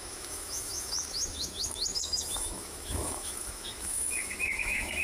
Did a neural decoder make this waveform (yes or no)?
yes